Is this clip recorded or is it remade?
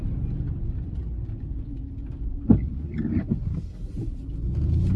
recorded